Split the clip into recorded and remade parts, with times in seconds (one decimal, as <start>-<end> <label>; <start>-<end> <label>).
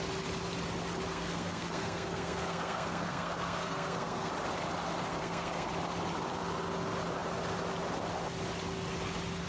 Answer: 0.0-1.1 recorded; 1.1-4.3 remade; 4.3-5.1 recorded; 5.1-5.7 remade; 5.7-9.5 recorded